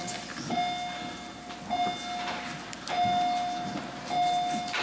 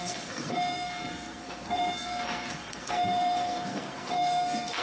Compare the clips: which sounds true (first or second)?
first